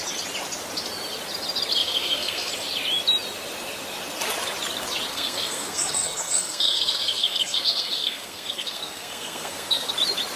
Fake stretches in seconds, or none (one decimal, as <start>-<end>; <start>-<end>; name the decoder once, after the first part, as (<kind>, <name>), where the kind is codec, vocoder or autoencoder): 1.8-2.5 (codec, SNAC); 5.1-9.9